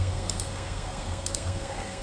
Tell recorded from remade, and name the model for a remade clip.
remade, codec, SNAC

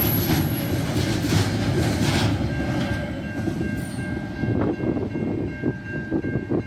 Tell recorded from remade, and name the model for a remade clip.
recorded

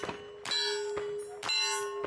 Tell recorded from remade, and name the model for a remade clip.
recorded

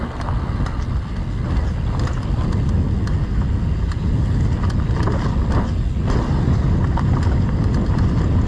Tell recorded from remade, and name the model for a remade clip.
recorded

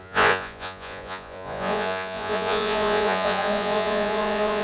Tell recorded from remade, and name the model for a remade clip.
remade, vocoder, Vocos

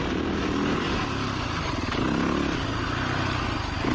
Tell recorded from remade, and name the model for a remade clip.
recorded